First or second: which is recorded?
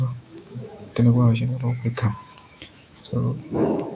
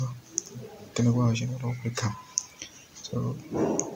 second